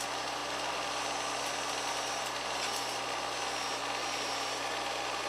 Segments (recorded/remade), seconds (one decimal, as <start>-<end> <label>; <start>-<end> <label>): 0.0-5.3 recorded